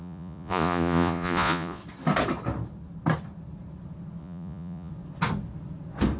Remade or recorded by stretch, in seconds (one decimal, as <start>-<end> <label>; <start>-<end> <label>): 0.0-1.8 remade; 1.8-4.2 recorded; 4.2-4.9 remade; 4.9-6.2 recorded